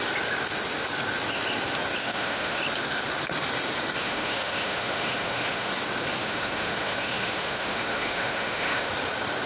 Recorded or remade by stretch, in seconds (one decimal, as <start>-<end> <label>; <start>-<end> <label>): 0.0-2.0 recorded; 2.0-2.6 remade; 2.6-4.0 recorded; 4.0-5.7 remade; 5.7-6.2 recorded; 6.2-8.9 remade; 8.9-9.5 recorded